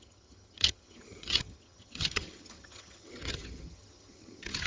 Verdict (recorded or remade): remade